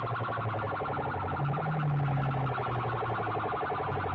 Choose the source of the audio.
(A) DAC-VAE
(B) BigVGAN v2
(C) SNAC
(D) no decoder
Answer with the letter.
D